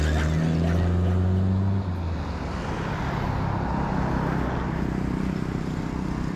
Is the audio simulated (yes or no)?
no